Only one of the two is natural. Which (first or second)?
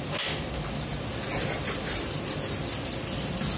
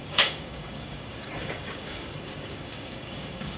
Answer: first